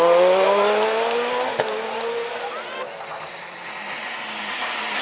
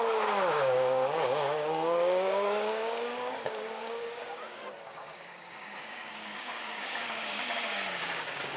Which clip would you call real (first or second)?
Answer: first